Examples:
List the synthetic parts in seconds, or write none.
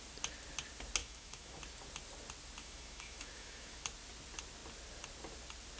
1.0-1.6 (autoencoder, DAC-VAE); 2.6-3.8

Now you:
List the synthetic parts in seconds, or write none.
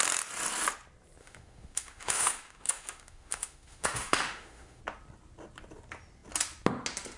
1.2-4.8 (autoencoder, DAC-VAE)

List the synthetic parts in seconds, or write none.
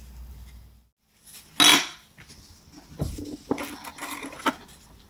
1.7-2.3 (vocoder, BigVGAN v2); 3.9-4.5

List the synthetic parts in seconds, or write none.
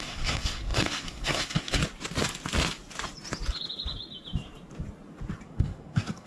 0.0-1.8 (codec, SNAC); 5.4-6.3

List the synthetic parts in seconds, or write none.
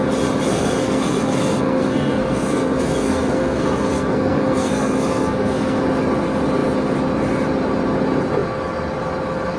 0.5-5.8 (codec, SNAC)